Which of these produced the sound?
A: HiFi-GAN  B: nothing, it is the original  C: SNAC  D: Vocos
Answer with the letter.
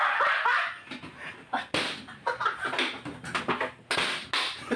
B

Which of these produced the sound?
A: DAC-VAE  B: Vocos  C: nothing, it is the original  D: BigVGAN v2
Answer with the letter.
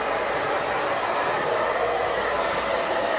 C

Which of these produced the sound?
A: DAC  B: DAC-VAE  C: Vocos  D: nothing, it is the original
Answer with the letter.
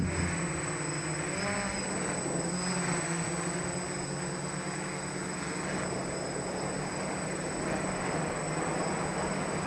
D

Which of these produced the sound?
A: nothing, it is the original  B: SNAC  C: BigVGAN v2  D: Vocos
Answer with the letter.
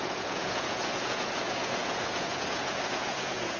D